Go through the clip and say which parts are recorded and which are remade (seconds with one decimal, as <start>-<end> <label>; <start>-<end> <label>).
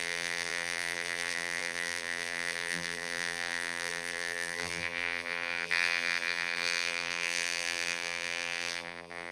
0.0-9.3 remade